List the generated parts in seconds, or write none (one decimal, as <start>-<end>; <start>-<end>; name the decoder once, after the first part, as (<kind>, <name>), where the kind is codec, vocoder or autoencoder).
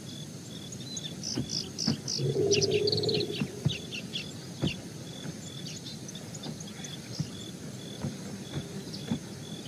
none